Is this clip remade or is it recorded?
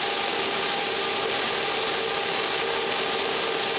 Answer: recorded